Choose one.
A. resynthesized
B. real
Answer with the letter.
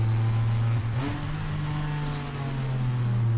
B